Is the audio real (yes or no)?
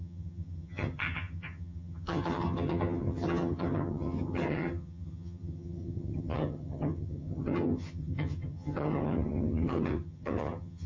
no